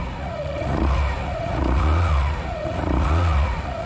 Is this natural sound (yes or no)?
no